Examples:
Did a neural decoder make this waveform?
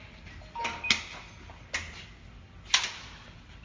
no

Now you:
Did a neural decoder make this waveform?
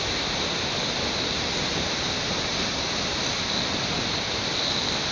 no